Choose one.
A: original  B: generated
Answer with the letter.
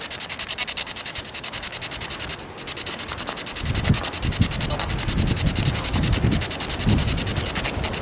A